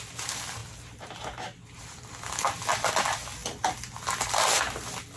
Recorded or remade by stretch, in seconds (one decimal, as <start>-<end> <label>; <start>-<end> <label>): 0.0-5.2 recorded